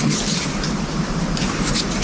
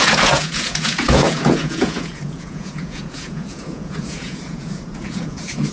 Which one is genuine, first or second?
first